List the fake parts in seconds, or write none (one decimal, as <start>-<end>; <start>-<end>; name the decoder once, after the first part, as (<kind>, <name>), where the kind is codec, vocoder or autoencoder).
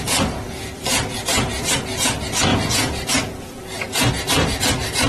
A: 2.5-4.1 (vocoder, Vocos)